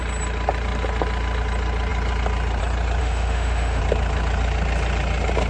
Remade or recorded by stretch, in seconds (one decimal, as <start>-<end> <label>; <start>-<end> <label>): 0.0-3.0 recorded; 3.0-3.8 remade; 3.8-5.5 recorded